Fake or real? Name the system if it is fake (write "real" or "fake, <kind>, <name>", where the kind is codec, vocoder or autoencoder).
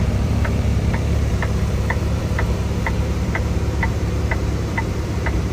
fake, vocoder, BigVGAN v2